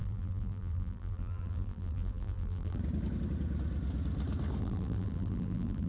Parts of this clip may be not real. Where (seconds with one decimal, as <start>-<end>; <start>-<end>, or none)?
0.0-2.8; 4.6-5.9